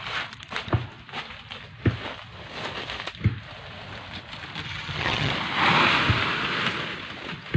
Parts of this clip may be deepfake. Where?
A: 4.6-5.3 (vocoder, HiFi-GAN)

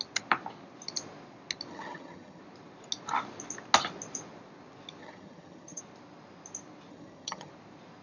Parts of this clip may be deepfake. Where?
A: 1.7-2.4 (vocoder, HiFi-GAN); 5.0-5.8; 6.9-7.5

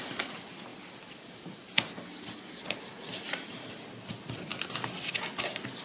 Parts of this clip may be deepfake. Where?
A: none

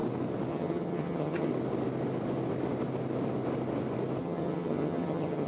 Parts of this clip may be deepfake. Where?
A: 0.5-1.5 (vocoder, HiFi-GAN); 4.2-5.5

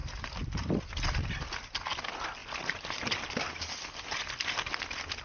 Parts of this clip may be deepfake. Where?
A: none